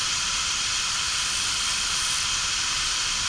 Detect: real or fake real